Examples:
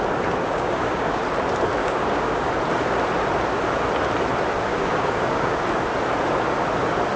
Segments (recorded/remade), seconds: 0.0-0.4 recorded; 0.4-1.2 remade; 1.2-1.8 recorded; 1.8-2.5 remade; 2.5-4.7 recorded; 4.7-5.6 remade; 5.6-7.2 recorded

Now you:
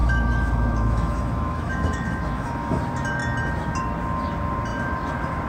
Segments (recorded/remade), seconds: 0.0-2.8 remade; 2.8-5.5 recorded